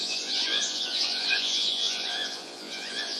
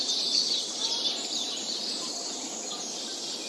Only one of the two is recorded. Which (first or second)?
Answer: second